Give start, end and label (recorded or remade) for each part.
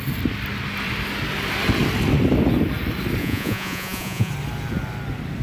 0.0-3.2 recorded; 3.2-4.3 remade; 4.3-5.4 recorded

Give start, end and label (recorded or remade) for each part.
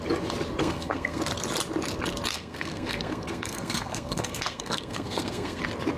0.0-0.6 recorded; 0.6-1.2 remade; 1.2-2.3 recorded; 2.3-5.6 remade; 5.6-6.0 recorded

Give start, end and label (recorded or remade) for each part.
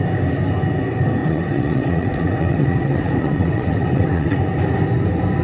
0.0-1.2 recorded; 1.2-4.4 remade; 4.4-5.4 recorded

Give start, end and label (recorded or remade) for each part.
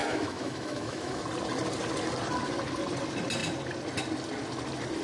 0.0-1.2 remade; 1.2-5.0 recorded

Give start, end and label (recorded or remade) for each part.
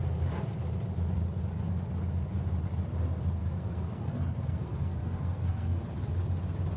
0.0-3.4 recorded; 3.4-5.8 remade; 5.8-6.8 recorded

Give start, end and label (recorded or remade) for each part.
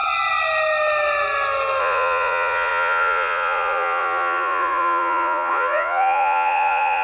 0.0-1.8 recorded; 1.8-7.0 remade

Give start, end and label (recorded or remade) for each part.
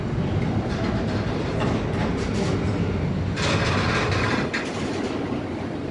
0.0-5.9 recorded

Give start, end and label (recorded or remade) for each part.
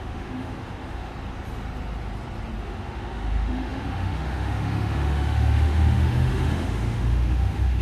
0.0-1.1 remade; 1.1-2.6 recorded; 2.6-7.8 remade